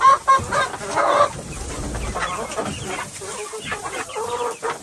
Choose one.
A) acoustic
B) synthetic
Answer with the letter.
A